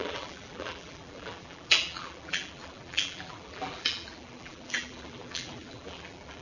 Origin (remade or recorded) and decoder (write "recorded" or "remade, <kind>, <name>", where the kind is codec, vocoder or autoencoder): remade, vocoder, BigVGAN v2